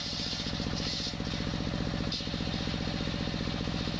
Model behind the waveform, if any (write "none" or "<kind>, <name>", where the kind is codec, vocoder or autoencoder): none